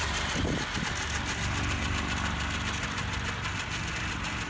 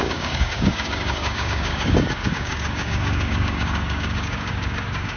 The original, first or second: first